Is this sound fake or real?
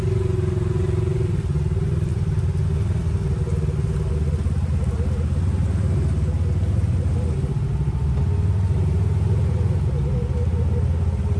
real